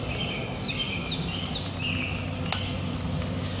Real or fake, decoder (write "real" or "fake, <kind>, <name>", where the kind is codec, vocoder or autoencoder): real